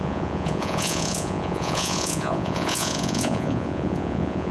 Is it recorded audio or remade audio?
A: remade